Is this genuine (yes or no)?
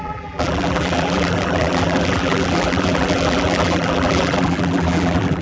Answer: no